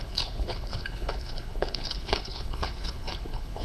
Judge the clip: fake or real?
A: fake